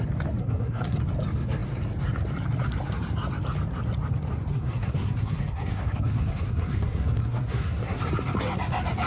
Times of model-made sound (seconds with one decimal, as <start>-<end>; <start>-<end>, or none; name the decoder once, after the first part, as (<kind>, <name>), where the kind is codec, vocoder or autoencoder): 0.4-1.0 (codec, SNAC); 4.5-8.0